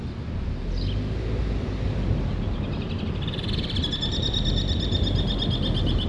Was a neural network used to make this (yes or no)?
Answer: no